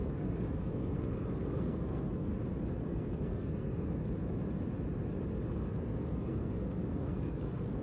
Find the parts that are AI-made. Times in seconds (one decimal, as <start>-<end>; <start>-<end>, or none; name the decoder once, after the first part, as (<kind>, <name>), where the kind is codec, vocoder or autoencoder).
0.0-2.3 (codec, SNAC); 2.9-4.0; 5.5-7.8